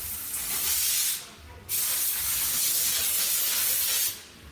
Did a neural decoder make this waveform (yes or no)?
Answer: no